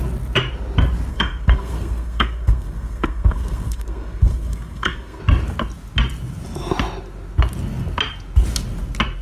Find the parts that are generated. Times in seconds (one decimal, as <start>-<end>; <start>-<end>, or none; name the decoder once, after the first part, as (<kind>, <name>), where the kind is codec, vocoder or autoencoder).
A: 1.1-5.2 (codec, SNAC)